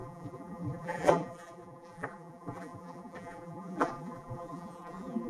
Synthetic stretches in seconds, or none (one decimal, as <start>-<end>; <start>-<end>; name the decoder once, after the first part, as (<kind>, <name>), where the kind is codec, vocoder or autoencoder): 0.0-5.3 (vocoder, BigVGAN v2)